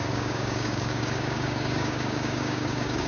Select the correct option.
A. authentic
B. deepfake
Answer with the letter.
B